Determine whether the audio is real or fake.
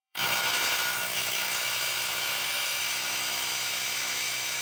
fake